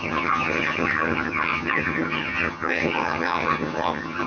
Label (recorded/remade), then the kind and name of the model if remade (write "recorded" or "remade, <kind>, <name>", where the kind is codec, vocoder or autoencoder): remade, vocoder, HiFi-GAN